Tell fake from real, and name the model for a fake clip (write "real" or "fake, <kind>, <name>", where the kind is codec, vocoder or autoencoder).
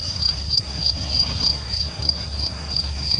fake, codec, SNAC